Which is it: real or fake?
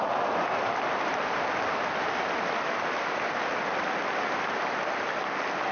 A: real